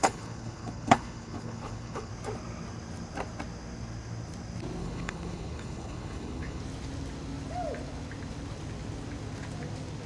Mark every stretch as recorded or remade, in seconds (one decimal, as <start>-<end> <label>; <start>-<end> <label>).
0.0-2.1 remade; 2.1-4.8 recorded; 4.8-6.6 remade; 6.6-10.1 recorded